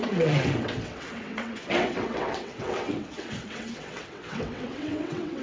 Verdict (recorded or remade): remade